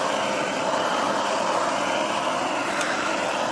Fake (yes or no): no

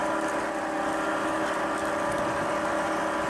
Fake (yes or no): no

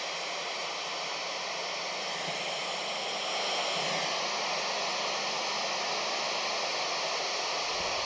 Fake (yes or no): no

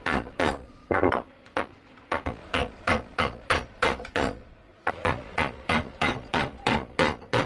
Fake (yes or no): yes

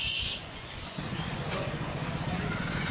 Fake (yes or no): yes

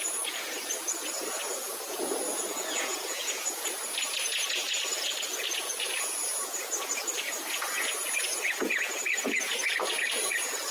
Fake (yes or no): yes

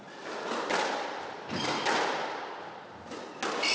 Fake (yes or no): no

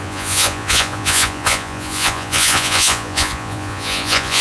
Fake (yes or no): yes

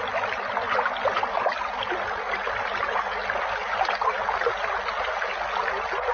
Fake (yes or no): no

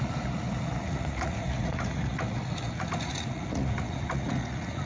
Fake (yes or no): yes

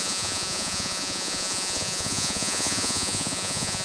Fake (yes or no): yes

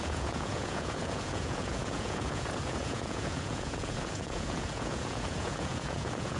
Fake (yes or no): yes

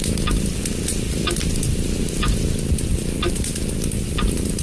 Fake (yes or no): no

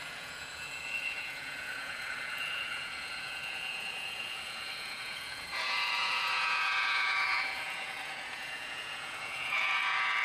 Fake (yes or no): yes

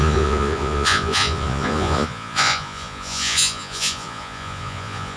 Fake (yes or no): yes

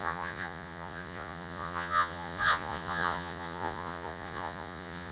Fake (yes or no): yes